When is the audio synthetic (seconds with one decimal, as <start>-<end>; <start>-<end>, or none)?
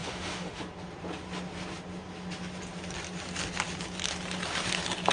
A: 0.0-0.6